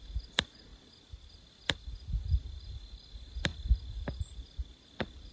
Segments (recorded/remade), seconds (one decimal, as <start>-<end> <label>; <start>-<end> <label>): 0.0-5.3 recorded